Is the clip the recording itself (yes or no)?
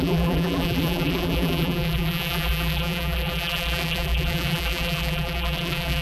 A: no